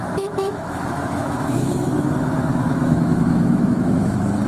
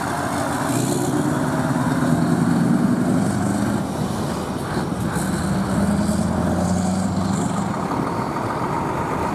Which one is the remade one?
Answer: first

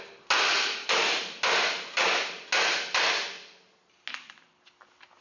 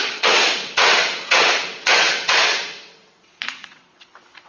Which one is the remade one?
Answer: second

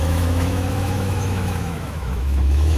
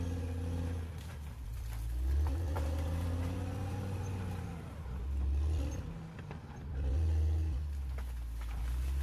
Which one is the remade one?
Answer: first